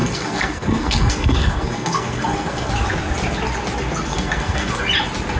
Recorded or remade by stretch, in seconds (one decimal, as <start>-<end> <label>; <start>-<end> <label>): 0.0-2.7 remade; 2.7-4.1 recorded; 4.1-4.8 remade; 4.8-5.4 recorded

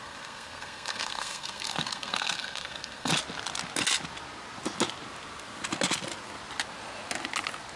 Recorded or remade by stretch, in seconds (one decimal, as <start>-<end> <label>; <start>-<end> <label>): 0.0-3.1 remade; 3.1-7.8 recorded

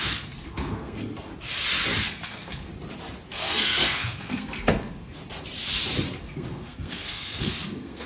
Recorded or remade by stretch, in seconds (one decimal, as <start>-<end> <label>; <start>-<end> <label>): 0.0-1.3 remade; 1.3-2.0 recorded; 2.0-2.7 remade; 2.7-3.3 recorded; 3.3-5.2 remade; 5.2-6.2 recorded; 6.2-8.1 remade

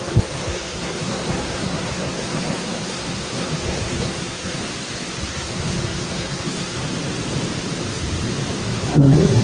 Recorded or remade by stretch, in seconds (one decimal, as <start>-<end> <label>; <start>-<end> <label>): 0.0-4.6 remade; 4.6-5.3 recorded; 5.3-6.8 remade; 6.8-8.6 recorded; 8.6-9.4 remade

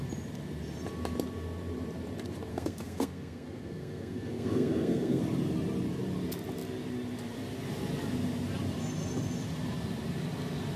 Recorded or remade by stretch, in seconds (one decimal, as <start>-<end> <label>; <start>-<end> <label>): 0.0-2.5 recorded; 2.5-5.2 remade; 5.2-10.8 recorded

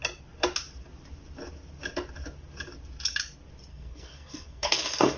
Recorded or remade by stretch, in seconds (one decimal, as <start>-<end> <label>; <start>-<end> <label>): 0.0-3.7 recorded; 3.7-5.2 remade

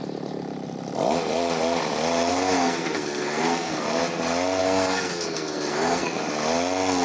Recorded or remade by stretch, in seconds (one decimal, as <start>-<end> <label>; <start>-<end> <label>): 0.0-2.3 recorded; 2.3-4.0 remade; 4.0-4.6 recorded; 4.6-6.2 remade; 6.2-7.0 recorded

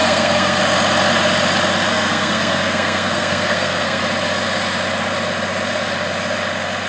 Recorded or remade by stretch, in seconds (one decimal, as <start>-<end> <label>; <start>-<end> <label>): 0.0-0.6 remade; 0.6-1.9 recorded; 1.9-4.0 remade; 4.0-6.9 recorded